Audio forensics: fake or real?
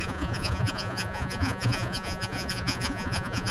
fake